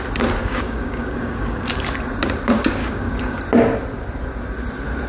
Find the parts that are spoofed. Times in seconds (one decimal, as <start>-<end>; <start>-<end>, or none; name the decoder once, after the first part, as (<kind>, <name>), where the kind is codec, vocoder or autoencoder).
0.4-1.6 (codec, DAC); 2.8-3.4